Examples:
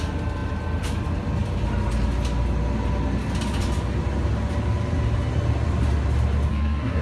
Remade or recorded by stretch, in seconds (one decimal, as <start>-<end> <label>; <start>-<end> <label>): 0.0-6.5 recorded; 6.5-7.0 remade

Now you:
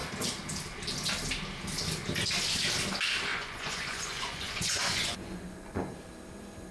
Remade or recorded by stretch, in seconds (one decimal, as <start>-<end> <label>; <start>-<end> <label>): 0.0-3.3 recorded; 3.3-5.9 remade; 5.9-6.7 recorded

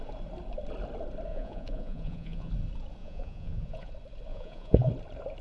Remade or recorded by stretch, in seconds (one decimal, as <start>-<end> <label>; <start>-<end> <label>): 0.0-1.3 recorded; 1.3-2.5 remade; 2.5-3.0 recorded; 3.0-3.9 remade; 3.9-4.3 recorded; 4.3-4.9 remade; 4.9-5.4 recorded

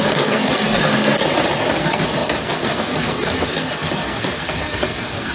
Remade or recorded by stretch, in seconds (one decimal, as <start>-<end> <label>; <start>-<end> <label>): 0.0-1.2 remade; 1.2-1.8 recorded; 1.8-5.3 remade

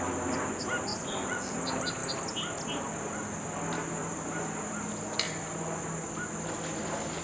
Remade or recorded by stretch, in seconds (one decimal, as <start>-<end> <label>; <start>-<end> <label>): 0.0-0.9 recorded; 0.9-1.5 remade; 1.5-7.2 recorded